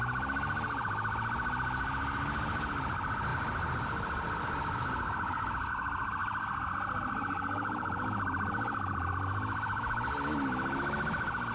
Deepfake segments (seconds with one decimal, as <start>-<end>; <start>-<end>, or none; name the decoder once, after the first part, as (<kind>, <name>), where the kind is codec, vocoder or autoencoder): none